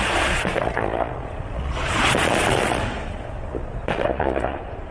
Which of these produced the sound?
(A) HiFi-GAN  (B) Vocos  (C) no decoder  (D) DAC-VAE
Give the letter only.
B